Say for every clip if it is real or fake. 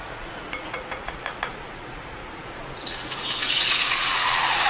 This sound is fake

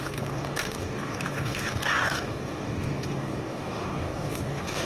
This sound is fake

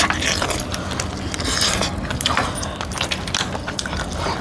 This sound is real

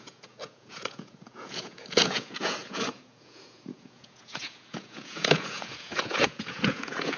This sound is fake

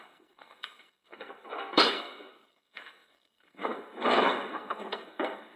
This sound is fake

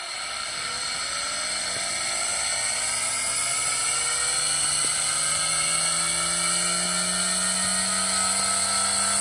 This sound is real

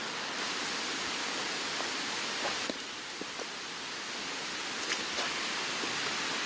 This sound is real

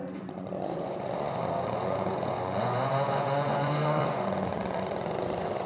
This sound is fake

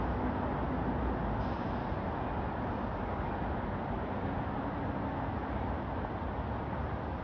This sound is real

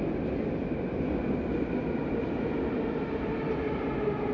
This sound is real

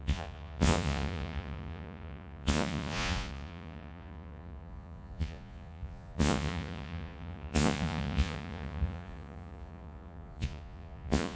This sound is fake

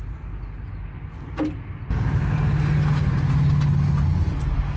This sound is real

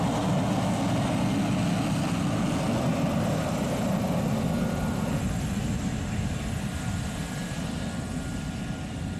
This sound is real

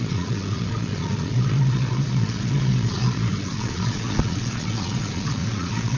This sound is fake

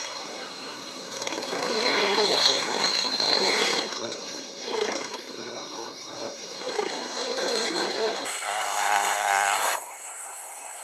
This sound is fake